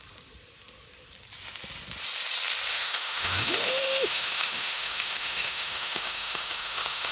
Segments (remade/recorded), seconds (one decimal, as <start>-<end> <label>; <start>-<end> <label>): 0.0-2.7 recorded; 2.7-7.1 remade